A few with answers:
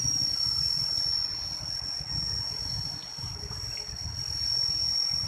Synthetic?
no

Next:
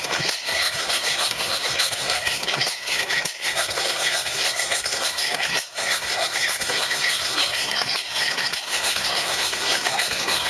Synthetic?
yes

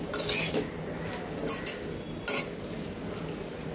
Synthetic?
no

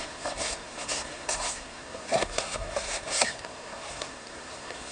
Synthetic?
yes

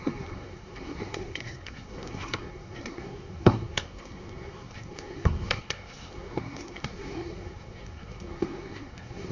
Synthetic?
yes